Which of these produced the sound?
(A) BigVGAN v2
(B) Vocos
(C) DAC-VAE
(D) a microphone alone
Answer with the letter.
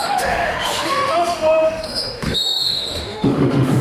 C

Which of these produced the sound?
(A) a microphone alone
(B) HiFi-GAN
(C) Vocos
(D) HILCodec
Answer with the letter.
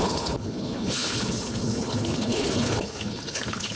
D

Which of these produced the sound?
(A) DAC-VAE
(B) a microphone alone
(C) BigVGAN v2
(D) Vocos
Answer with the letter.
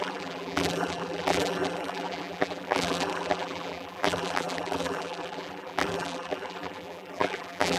C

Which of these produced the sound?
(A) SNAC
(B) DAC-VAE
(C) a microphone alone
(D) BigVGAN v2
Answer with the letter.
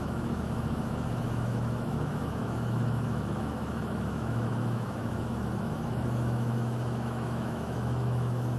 B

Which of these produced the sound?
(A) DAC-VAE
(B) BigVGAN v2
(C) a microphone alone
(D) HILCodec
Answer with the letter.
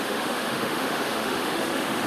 A